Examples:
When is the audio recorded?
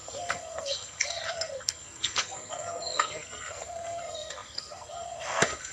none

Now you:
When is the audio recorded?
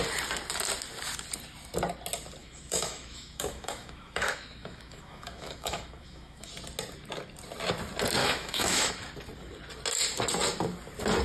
0.0-2.4; 6.5-8.2; 8.9-11.2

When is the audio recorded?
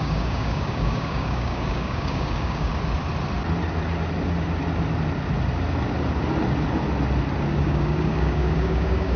2.7-7.6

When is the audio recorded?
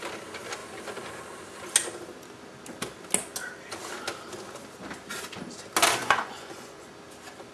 0.0-6.0; 6.9-7.5